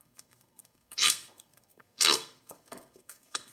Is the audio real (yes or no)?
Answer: no